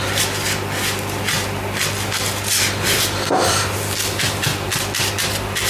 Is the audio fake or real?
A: real